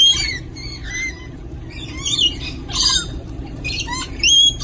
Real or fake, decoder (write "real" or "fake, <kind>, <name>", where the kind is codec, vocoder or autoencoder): fake, vocoder, BigVGAN v2